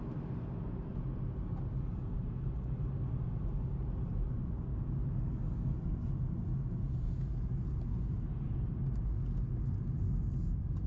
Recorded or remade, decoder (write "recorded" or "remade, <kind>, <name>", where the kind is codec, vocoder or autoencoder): recorded